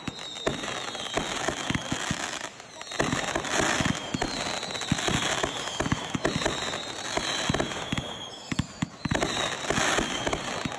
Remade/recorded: recorded